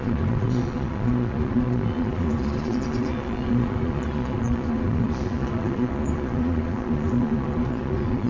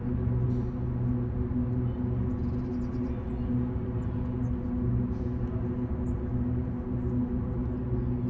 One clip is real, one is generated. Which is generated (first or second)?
first